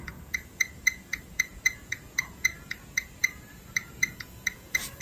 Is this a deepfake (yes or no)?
yes